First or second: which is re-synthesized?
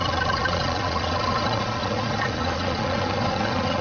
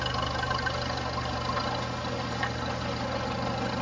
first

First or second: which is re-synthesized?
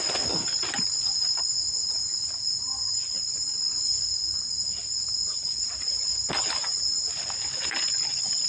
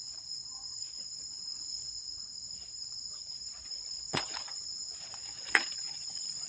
second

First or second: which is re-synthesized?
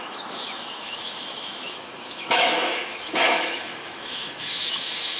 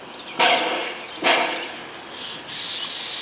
first